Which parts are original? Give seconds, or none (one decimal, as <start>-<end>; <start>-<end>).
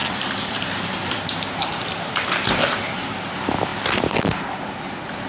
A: 2.9-5.3